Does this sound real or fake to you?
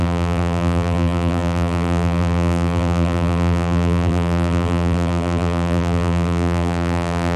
fake